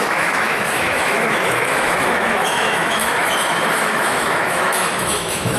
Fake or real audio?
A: fake